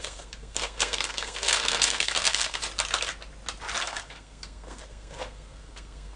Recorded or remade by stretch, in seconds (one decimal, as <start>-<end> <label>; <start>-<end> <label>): 0.0-2.6 remade; 2.6-3.8 recorded; 3.8-6.2 remade